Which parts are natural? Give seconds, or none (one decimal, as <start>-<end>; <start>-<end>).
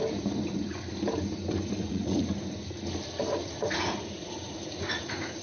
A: 0.0-1.8; 2.3-3.4